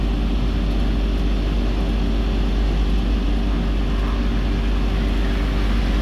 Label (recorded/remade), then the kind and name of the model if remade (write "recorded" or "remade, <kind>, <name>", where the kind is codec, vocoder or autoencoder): recorded